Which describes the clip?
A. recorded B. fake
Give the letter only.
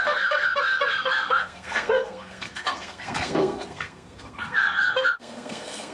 B